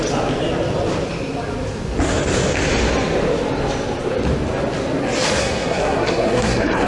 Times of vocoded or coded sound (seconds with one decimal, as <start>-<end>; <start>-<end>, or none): 5.4-6.9